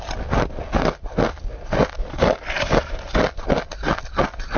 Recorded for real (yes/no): yes